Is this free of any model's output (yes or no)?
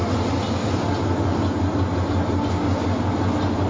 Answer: yes